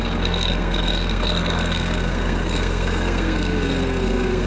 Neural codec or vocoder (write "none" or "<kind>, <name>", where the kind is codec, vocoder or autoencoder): codec, SNAC